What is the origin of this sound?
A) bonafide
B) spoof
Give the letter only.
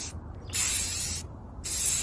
A